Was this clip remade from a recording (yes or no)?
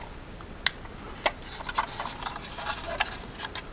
no